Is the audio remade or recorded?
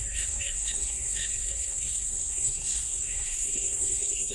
remade